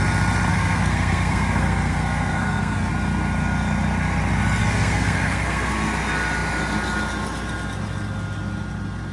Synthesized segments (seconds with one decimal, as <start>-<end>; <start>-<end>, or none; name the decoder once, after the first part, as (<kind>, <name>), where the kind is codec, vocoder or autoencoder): 0.5-2.9 (codec, SNAC); 4.6-5.7